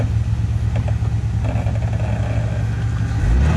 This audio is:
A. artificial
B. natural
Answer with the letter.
B